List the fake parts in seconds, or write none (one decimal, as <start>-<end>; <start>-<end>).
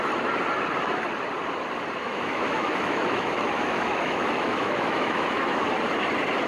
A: 2.0-5.6